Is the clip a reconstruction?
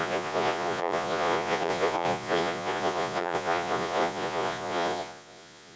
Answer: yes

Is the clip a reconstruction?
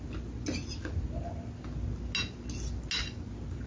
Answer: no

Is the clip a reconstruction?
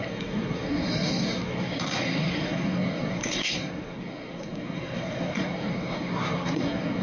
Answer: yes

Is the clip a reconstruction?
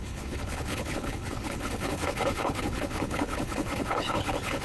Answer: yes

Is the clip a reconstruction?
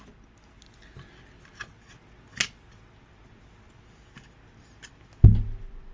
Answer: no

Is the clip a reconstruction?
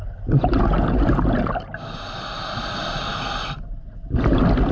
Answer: no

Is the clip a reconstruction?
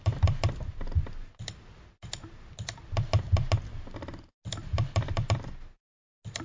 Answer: no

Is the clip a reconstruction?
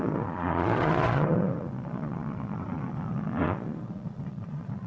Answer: yes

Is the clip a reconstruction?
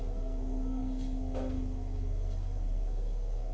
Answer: yes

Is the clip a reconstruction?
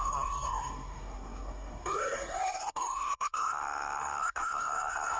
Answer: yes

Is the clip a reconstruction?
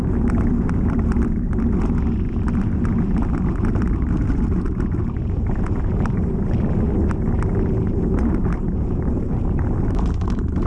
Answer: no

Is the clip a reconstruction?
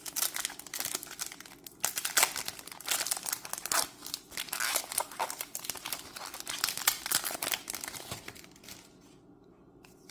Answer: no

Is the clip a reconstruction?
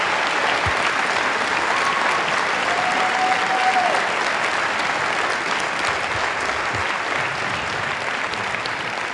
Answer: no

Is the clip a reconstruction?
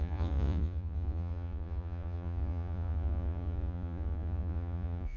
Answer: yes